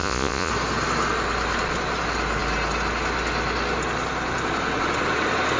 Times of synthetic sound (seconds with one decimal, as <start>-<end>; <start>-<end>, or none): 0.0-0.5

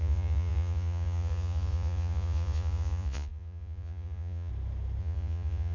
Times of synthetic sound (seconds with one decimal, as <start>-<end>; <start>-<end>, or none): 0.0-4.5; 5.0-5.7

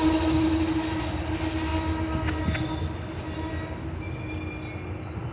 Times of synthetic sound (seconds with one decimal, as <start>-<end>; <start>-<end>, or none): none

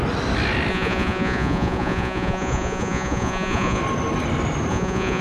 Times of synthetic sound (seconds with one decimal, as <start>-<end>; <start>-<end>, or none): 0.7-3.8; 4.7-5.2

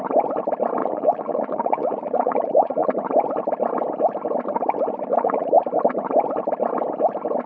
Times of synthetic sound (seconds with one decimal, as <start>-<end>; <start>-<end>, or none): 0.8-2.9; 5.1-5.6

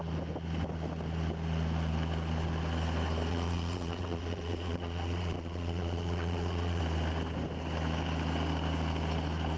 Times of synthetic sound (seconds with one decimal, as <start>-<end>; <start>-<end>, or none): 3.3-6.8

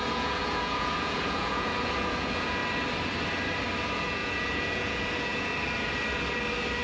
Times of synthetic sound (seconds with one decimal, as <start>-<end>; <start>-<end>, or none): 0.0-2.6; 3.8-5.5